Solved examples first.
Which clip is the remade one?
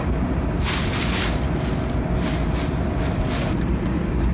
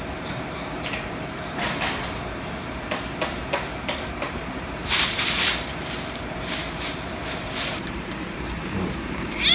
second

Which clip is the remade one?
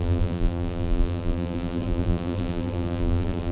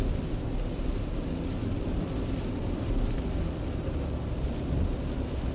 first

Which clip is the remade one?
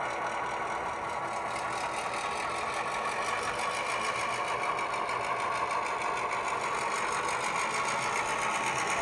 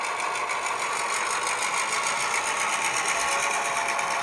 second